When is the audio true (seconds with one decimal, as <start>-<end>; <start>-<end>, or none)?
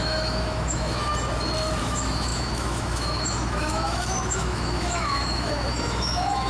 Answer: 1.1-1.8